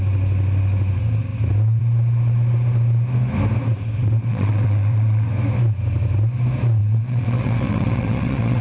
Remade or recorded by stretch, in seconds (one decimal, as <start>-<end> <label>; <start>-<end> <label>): 0.0-4.0 recorded; 4.0-5.3 remade; 5.3-6.8 recorded; 6.8-8.6 remade